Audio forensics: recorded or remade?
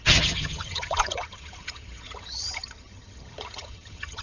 remade